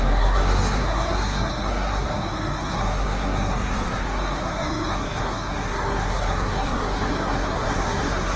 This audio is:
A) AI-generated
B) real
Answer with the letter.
A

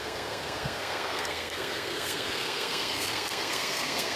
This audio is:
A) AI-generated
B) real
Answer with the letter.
A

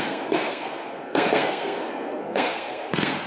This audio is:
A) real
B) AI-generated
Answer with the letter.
B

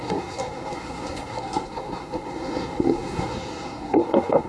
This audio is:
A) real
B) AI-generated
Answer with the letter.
B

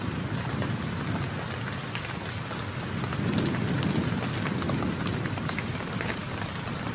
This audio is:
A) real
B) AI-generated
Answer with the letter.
A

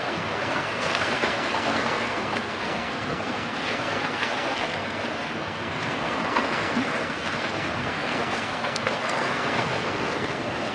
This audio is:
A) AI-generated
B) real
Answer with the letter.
A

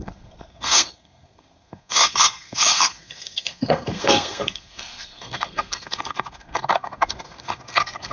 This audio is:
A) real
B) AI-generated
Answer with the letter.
B